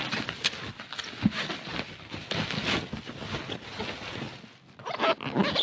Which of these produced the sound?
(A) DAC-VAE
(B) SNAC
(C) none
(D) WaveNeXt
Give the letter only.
C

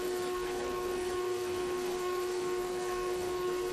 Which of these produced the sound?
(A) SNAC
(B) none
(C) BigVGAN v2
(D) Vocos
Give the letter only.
A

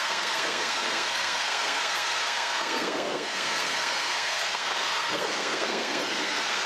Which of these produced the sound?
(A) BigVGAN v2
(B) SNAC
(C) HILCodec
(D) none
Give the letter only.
B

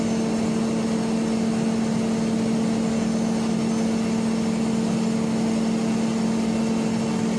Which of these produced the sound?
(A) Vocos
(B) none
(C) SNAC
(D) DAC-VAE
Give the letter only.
B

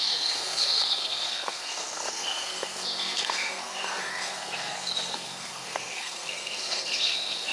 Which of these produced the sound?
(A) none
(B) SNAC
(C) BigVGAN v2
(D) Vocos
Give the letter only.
B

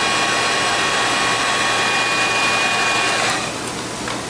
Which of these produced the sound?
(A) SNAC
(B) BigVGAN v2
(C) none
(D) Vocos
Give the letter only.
C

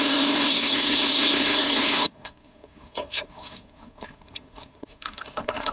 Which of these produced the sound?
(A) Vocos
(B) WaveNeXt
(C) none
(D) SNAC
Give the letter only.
D